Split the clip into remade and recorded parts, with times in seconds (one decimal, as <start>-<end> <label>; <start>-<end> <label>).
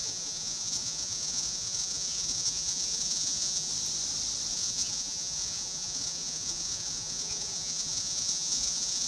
0.0-3.7 remade; 3.7-4.5 recorded; 4.5-9.1 remade